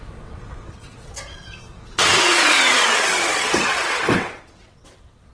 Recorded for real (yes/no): no